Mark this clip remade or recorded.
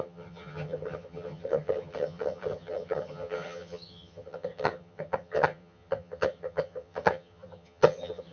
remade